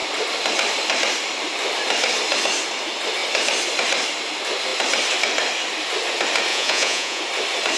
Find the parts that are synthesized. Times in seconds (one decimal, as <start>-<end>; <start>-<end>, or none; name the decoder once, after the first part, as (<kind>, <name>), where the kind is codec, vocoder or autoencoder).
6.5-7.2 (vocoder, Vocos)

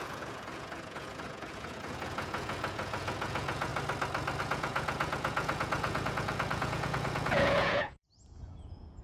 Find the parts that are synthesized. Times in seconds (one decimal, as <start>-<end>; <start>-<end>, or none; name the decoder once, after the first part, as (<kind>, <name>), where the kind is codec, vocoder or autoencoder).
0.0-3.7 (vocoder, Vocos); 4.4-9.0

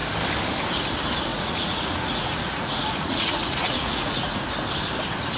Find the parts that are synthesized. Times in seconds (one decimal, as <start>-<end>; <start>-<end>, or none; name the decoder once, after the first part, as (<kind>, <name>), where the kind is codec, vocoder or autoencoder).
1.3-4.5 (vocoder, Vocos)

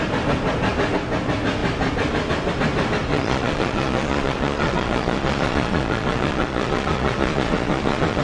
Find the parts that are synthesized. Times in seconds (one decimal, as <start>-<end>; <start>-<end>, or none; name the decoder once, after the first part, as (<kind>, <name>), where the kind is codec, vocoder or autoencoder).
3.1-8.2 (vocoder, Vocos)

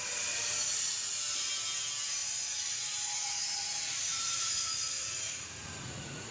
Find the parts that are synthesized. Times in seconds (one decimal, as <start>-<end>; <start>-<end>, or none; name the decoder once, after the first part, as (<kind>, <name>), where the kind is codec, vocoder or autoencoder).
2.2-6.3 (vocoder, Vocos)

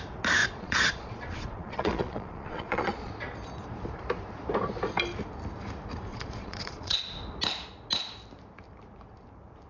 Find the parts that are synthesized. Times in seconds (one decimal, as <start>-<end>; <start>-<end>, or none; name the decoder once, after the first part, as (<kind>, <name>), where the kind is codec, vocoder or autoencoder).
0.4-3.1 (vocoder, Vocos); 6.1-7.0

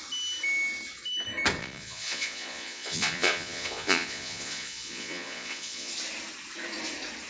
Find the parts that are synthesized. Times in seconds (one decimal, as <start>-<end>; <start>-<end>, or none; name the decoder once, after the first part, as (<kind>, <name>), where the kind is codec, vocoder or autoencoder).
1.6-5.9 (vocoder, Vocos)

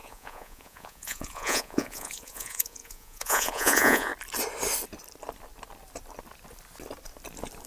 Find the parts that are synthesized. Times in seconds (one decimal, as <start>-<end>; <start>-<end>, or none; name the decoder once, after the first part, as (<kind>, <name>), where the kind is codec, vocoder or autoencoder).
0.0-4.1 (vocoder, Vocos)